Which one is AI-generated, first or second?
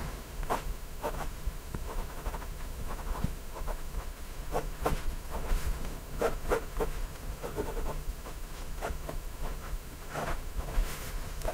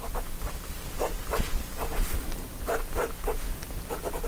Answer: first